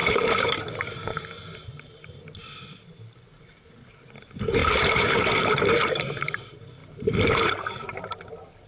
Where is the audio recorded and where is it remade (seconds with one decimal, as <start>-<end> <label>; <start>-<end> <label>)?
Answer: 0.0-2.2 remade; 2.2-4.6 recorded; 4.6-5.6 remade; 5.6-6.8 recorded; 6.8-8.0 remade; 8.0-8.7 recorded